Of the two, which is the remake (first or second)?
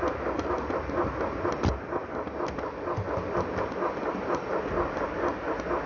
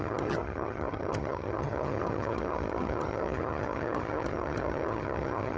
second